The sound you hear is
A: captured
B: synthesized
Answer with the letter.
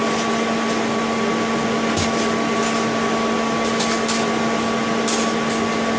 A